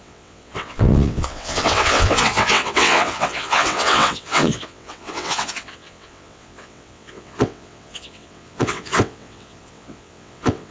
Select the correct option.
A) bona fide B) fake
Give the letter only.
B